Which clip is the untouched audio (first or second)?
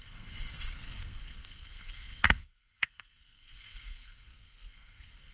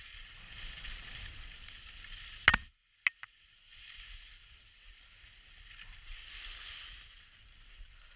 second